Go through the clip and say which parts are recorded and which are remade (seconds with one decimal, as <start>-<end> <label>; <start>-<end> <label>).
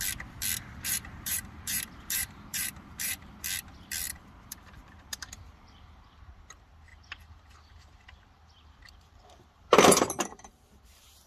0.0-0.7 recorded; 0.7-3.4 remade; 3.4-4.1 recorded; 4.1-6.2 remade; 6.2-6.9 recorded; 6.9-10.8 remade; 10.8-11.3 recorded